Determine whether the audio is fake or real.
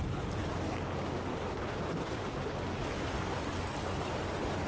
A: real